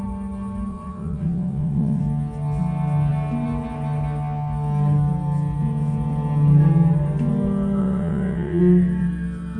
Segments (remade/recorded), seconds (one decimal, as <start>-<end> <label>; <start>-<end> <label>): 0.0-0.7 recorded; 0.7-2.0 remade; 2.0-7.8 recorded; 7.8-8.6 remade; 8.6-9.6 recorded